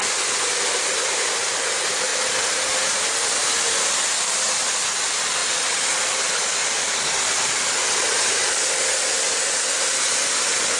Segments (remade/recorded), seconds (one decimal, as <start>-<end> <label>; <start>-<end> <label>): 0.0-10.8 recorded